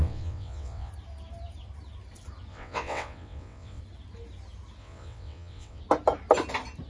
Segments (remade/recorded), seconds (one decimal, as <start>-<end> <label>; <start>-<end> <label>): 0.0-0.9 remade; 0.9-2.5 recorded; 2.5-3.8 remade; 3.8-4.8 recorded; 4.8-5.8 remade; 5.8-6.9 recorded